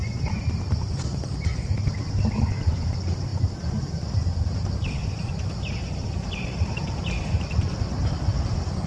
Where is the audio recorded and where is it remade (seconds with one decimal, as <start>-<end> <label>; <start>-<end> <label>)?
0.0-8.9 recorded